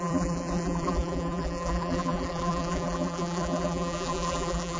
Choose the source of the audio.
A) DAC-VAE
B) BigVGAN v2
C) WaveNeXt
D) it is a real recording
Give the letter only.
B